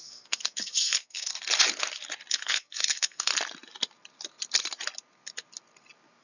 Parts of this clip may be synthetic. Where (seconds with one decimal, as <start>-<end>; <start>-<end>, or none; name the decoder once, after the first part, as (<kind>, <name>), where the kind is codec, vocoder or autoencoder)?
0.0-1.3 (codec, SNAC); 2.3-3.3